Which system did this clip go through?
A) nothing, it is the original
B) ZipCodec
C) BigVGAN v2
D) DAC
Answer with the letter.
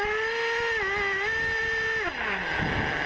A